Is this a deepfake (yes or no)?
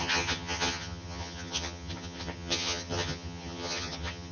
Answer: yes